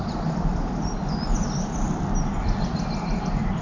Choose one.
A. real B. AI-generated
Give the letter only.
A